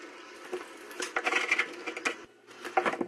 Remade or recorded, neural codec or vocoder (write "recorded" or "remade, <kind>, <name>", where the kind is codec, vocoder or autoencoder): recorded